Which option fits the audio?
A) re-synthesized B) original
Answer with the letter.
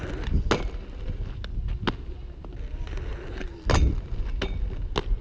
B